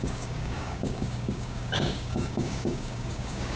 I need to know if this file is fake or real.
fake